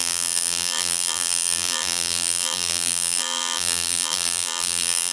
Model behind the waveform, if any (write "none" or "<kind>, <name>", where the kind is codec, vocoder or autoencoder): vocoder, BigVGAN v2